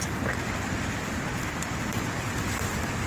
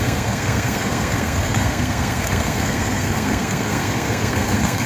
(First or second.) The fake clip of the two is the second